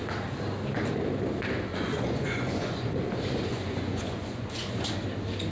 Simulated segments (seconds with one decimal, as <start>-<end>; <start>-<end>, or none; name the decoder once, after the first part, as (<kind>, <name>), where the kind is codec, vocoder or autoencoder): 1.7-2.9 (vocoder, Vocos); 3.5-4.7